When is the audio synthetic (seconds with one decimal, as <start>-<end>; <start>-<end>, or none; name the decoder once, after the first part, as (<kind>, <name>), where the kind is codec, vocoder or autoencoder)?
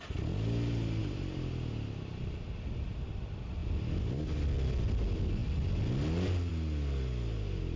none